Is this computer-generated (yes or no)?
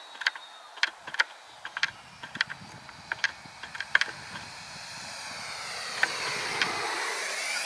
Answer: no